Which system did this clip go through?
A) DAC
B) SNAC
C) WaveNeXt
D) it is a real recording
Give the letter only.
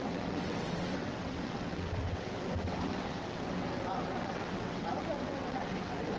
C